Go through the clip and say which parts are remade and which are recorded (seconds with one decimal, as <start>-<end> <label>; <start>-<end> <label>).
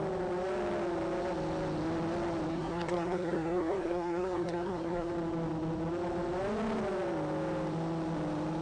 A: 0.0-2.5 recorded; 2.5-5.1 remade; 5.1-8.6 recorded